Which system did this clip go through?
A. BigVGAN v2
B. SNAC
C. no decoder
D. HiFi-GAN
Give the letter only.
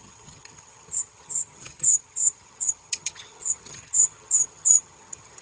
D